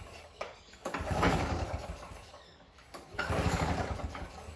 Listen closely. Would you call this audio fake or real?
fake